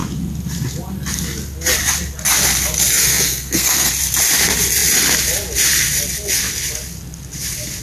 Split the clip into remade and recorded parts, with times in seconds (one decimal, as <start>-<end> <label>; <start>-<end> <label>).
0.0-3.0 recorded; 3.0-3.9 remade; 3.9-7.8 recorded